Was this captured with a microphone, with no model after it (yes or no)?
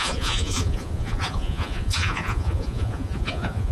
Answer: no